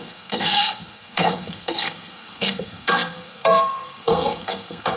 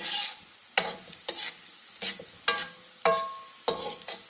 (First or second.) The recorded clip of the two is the second